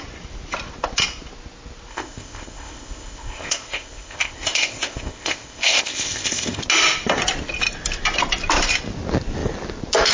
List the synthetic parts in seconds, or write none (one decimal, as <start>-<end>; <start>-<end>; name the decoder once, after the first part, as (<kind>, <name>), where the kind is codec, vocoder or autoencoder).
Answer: 1.9-6.6 (codec, ZipCodec)